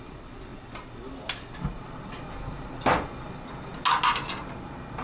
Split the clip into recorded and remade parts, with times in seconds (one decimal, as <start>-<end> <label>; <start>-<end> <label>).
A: 0.0-5.0 recorded